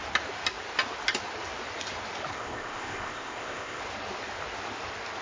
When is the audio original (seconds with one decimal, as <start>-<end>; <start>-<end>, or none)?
0.0-2.3; 3.8-5.2